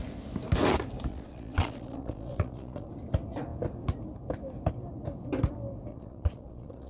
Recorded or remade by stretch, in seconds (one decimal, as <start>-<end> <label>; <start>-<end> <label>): 0.0-1.1 recorded; 1.1-2.9 remade; 2.9-5.9 recorded; 5.9-6.9 remade